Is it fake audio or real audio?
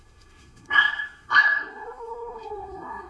fake